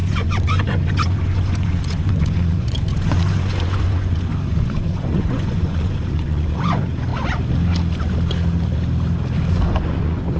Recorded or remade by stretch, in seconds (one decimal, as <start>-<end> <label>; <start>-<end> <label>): 0.0-7.1 remade; 7.1-9.5 recorded; 9.5-10.4 remade